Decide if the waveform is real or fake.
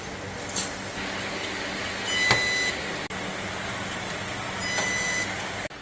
real